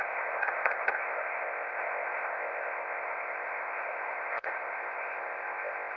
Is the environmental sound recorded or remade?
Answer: remade